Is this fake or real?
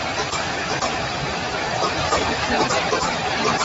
fake